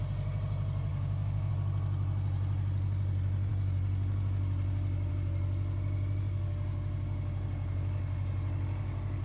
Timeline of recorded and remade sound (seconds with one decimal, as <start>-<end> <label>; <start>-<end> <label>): 0.0-0.9 recorded; 0.9-1.5 remade; 1.5-9.2 recorded